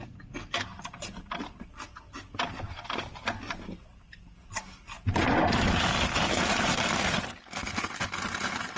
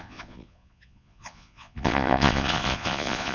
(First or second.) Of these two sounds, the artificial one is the second